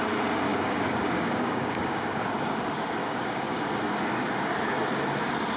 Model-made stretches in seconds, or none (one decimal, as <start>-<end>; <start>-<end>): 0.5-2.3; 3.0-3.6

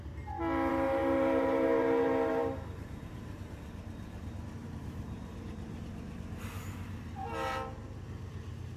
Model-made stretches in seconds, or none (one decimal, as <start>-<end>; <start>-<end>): 0.7-3.4; 4.6-7.1

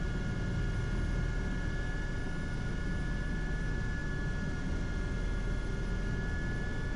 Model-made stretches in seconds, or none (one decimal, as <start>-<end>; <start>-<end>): none

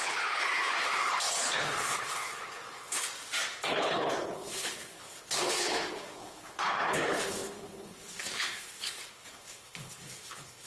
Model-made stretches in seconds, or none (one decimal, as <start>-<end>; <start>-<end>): 0.0-3.1; 3.7-10.7